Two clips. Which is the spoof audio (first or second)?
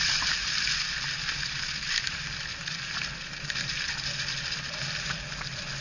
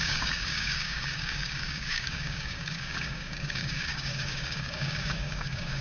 second